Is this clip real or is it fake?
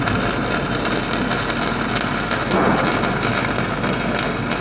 real